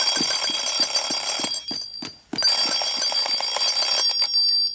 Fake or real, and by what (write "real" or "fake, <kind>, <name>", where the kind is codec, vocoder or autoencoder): real